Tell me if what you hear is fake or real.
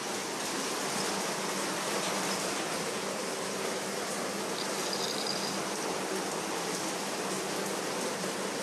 real